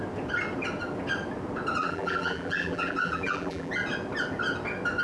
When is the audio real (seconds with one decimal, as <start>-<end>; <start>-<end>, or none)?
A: 0.0-1.8; 3.7-5.0